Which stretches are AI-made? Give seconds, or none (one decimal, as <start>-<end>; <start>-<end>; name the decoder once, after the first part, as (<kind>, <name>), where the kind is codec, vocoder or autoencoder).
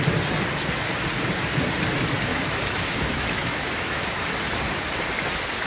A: 2.3-4.0 (autoencoder, DAC-VAE)